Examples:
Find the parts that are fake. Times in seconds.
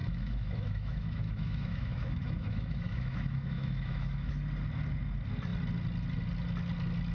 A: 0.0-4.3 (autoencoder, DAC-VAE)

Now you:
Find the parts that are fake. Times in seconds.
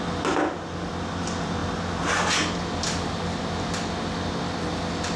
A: none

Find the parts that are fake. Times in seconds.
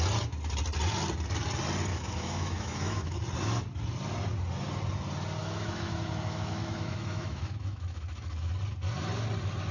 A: 1.9-3.2 (autoencoder, DAC-VAE); 5.4-8.5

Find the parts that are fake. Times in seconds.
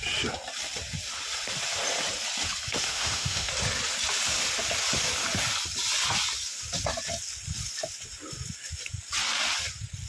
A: 2.7-3.5 (autoencoder, DAC-VAE)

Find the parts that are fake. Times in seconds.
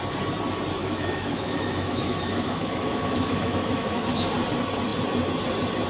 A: 0.8-4.3 (autoencoder, DAC-VAE)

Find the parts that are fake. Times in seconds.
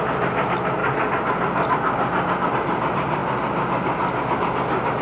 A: none